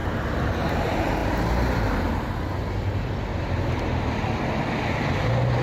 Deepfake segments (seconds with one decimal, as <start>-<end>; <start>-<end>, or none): none